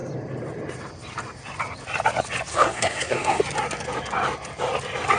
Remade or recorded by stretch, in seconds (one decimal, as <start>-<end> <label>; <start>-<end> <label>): 0.0-2.5 recorded; 2.5-3.4 remade; 3.4-5.2 recorded